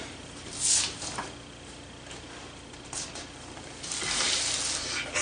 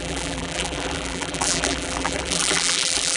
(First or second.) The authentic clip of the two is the first